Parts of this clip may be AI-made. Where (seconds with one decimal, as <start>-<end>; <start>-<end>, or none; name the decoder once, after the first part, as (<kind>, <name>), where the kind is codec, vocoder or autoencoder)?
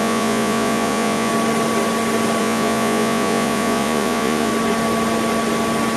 0.0-1.3 (vocoder, Vocos); 2.4-4.5